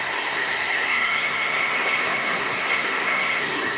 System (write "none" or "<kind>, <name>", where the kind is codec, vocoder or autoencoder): codec, SNAC